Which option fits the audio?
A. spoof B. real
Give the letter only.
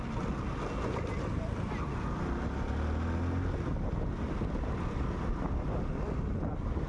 B